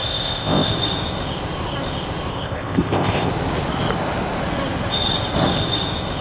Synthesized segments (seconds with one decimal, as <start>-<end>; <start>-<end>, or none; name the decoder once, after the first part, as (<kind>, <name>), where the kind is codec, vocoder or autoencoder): 0.0-0.7 (codec, ZipCodec); 2.3-3.3